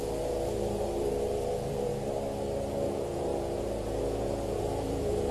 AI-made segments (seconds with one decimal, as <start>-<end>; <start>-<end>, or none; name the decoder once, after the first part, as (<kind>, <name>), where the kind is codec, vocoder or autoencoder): 0.0-1.9 (vocoder, Vocos); 2.7-5.3